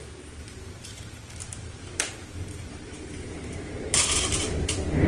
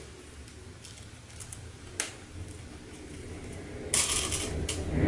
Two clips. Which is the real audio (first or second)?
second